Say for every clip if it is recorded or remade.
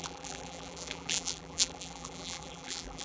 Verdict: remade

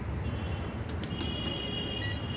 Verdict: recorded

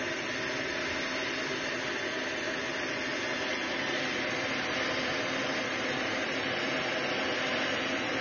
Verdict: recorded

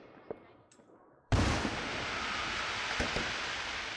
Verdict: remade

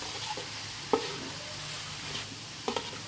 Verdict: recorded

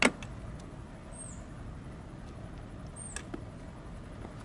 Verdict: recorded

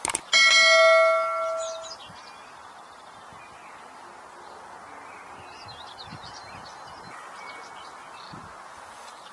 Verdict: recorded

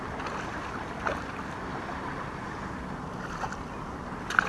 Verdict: recorded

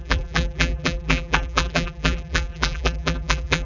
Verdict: remade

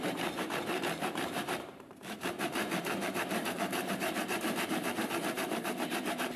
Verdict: remade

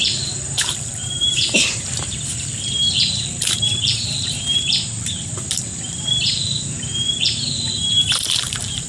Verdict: remade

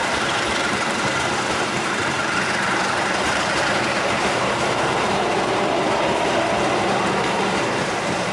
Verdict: remade